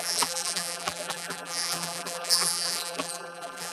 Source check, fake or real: fake